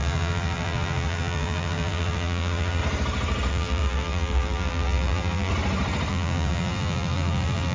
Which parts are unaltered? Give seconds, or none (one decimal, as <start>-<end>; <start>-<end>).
2.8-3.5; 5.5-6.1